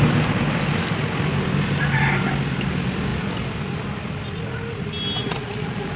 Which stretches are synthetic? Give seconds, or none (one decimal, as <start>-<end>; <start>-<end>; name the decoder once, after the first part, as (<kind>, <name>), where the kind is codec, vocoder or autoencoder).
5.2-6.0 (vocoder, Vocos)